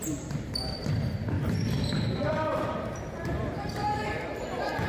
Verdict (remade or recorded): remade